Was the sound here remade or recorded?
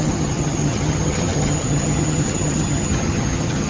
remade